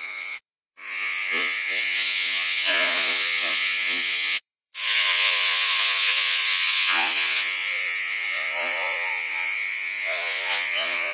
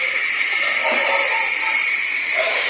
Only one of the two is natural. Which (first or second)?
second